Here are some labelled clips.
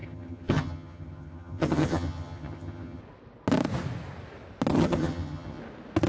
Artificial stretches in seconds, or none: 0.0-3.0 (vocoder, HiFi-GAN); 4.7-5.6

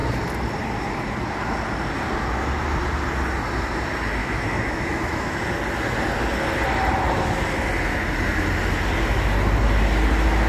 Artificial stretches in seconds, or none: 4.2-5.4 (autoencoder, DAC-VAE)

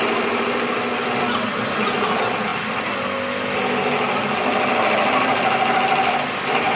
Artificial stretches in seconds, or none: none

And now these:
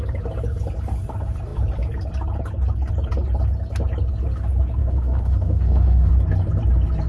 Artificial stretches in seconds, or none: 4.8-6.1 (autoencoder, DAC-VAE)

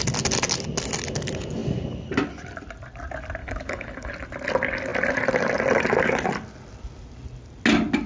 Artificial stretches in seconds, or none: 3.4-4.1 (codec, HILCodec)